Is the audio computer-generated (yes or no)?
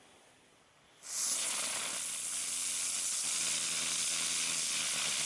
no